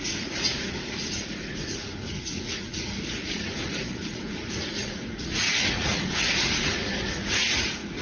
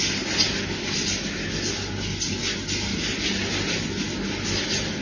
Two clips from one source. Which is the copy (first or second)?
first